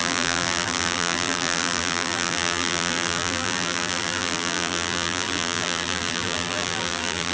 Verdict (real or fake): fake